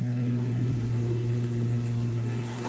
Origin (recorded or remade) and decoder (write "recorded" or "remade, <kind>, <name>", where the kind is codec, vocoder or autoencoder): remade, codec, SNAC